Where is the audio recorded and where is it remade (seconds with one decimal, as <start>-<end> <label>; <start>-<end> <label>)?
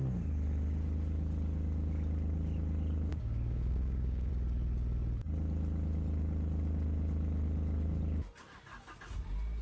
0.0-3.1 recorded; 3.1-4.3 remade; 4.3-9.6 recorded